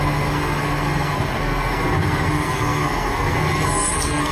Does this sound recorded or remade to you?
remade